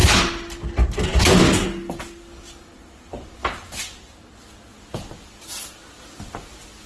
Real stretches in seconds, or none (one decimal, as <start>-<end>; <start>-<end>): 0.0-6.9